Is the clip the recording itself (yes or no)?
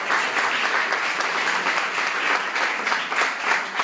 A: yes